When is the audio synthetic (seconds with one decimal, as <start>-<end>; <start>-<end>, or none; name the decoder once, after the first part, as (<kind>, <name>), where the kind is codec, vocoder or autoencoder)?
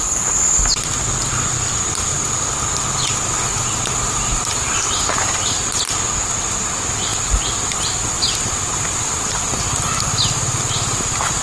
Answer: none